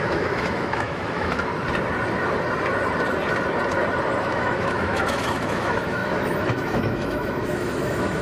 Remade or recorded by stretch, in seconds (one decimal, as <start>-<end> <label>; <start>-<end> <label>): 0.0-1.5 remade; 1.5-4.2 recorded; 4.2-8.2 remade